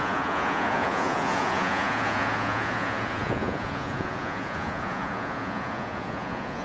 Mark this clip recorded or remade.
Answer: remade